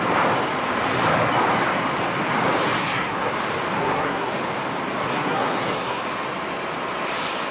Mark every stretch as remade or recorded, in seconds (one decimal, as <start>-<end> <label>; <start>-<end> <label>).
0.0-2.8 recorded; 2.8-3.3 remade; 3.3-3.8 recorded; 3.8-4.3 remade; 4.3-5.0 recorded; 5.0-6.0 remade; 6.0-7.5 recorded